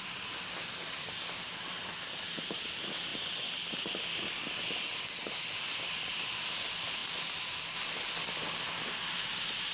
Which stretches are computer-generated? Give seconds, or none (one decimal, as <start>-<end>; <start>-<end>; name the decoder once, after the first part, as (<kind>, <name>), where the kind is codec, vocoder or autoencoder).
none